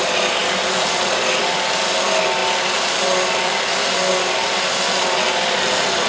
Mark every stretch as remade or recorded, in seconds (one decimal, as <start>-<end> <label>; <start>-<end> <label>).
0.0-6.1 recorded

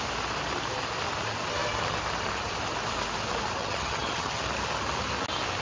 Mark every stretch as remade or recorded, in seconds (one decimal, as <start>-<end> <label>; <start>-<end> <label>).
0.0-3.6 recorded; 3.6-4.4 remade; 4.4-5.6 recorded

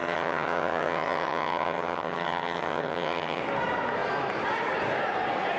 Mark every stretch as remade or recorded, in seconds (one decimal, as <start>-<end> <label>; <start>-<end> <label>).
0.0-3.4 remade; 3.4-5.6 recorded

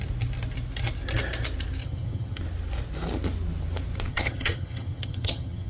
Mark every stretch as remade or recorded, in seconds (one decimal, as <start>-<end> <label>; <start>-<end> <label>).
0.0-1.8 recorded; 1.8-2.4 remade; 2.4-4.1 recorded; 4.1-5.7 remade

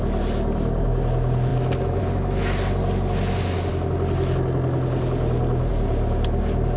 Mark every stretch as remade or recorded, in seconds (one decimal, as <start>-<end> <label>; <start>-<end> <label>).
0.0-6.8 recorded

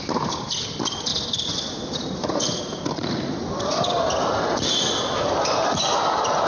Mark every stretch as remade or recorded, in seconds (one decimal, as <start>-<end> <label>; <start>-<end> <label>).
0.0-6.5 recorded

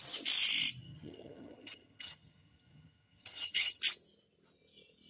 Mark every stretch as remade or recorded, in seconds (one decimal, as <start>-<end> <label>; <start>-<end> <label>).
0.0-0.8 recorded; 0.8-3.8 remade; 3.8-5.1 recorded